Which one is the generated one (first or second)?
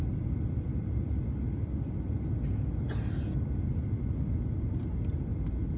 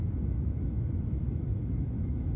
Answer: second